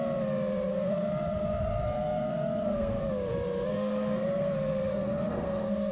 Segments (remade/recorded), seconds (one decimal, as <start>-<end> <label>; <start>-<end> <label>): 0.0-0.7 recorded; 0.7-3.0 remade; 3.0-3.7 recorded; 3.7-5.9 remade